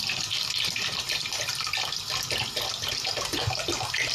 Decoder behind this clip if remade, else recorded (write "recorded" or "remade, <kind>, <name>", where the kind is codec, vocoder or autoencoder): recorded